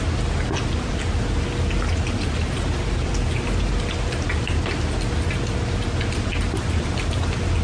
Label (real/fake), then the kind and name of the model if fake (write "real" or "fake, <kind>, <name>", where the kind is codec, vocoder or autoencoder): real